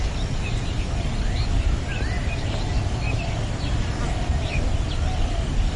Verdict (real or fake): real